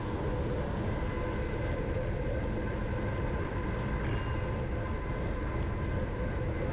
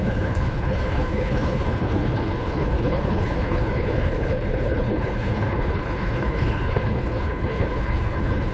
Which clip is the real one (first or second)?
first